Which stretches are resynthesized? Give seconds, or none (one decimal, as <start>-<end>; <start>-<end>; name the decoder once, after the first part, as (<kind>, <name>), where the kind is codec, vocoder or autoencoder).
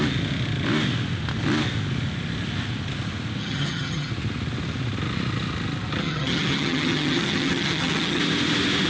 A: 3.4-4.1 (vocoder, HiFi-GAN); 6.0-8.2